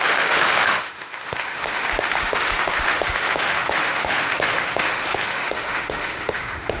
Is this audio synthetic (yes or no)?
yes